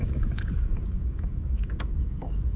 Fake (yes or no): yes